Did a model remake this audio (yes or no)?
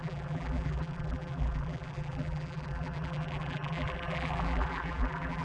yes